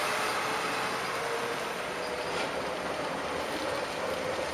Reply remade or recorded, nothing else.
recorded